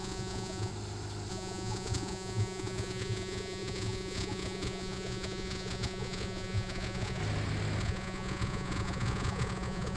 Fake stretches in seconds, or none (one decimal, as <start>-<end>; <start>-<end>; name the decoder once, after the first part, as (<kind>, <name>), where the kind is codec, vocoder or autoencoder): 0.0-0.7 (vocoder, Vocos); 1.3-7.2; 7.8-10.0